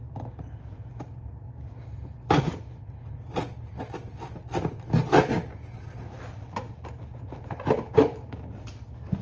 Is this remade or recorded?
recorded